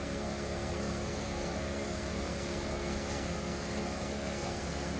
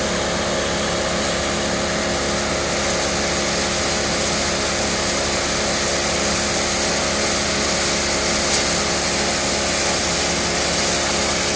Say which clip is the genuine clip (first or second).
second